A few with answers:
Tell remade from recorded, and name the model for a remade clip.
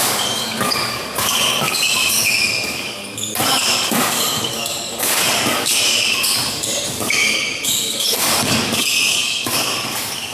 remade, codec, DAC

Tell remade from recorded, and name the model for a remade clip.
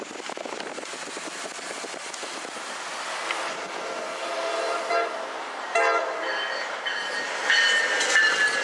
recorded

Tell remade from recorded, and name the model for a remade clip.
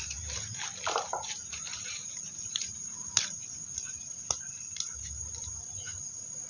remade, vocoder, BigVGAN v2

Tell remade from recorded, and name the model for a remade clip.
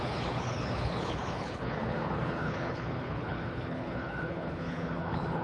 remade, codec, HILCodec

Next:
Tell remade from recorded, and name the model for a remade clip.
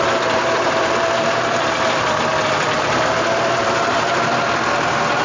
remade, vocoder, BigVGAN v2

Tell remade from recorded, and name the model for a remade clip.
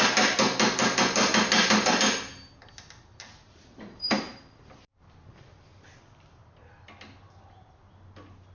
recorded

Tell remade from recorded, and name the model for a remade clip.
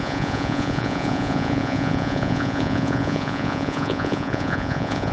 remade, vocoder, Vocos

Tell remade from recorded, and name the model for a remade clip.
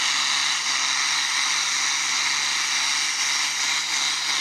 recorded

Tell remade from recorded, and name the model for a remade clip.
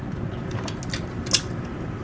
recorded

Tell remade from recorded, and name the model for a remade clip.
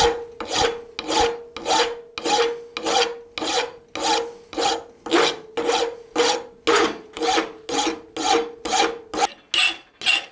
recorded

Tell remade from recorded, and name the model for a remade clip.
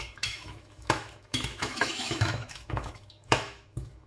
remade, autoencoder, DAC-VAE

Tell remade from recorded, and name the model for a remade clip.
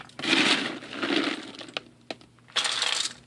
recorded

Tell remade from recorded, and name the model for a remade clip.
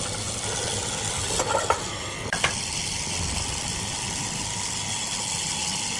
recorded